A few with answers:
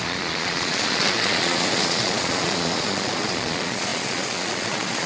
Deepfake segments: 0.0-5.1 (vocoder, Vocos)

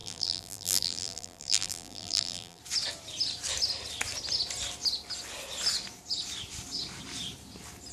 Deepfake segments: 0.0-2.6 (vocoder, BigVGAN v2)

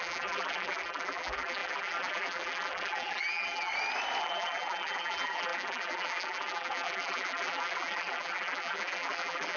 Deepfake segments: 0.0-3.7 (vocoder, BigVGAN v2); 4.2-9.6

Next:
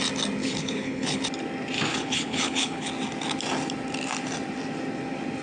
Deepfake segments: 0.4-1.2 (codec, HILCodec); 1.9-2.9